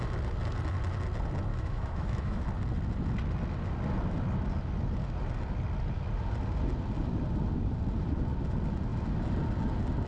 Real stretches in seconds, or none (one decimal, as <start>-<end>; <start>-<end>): 0.0-1.5; 2.4-10.1

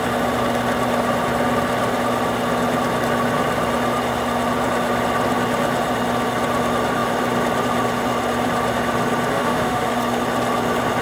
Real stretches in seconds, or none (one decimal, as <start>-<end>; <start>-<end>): 0.0-9.3; 9.9-11.0

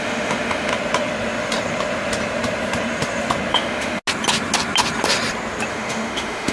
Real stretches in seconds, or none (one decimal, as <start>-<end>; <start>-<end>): 0.7-3.5; 4.0-5.7

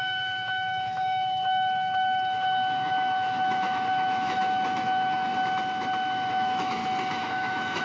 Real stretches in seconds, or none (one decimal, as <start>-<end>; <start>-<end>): 5.3-6.3; 6.8-7.3

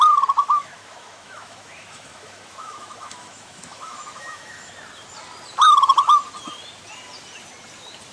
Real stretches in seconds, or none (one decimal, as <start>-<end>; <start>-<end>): 0.0-0.4; 4.7-8.1